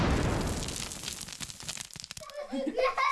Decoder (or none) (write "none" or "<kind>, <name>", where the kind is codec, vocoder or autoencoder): none